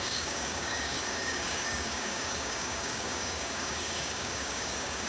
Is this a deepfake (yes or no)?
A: yes